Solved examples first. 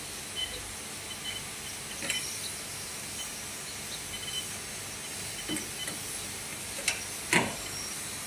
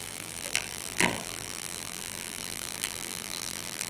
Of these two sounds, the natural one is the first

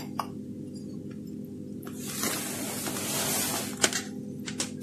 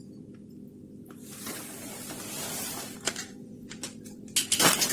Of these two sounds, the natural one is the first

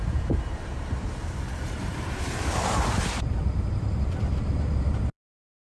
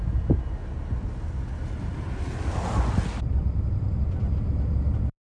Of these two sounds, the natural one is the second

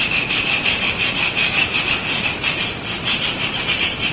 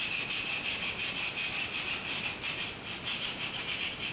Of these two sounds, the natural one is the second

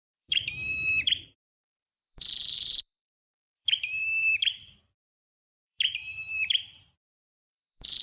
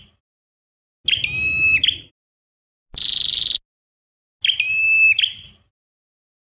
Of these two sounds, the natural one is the second